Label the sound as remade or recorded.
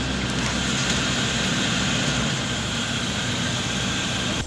recorded